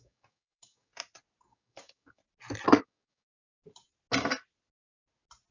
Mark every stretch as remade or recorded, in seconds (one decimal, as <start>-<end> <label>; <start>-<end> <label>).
0.0-0.9 remade; 0.9-1.4 recorded; 1.4-2.2 remade; 2.2-2.8 recorded; 2.8-3.3 remade; 3.3-5.5 recorded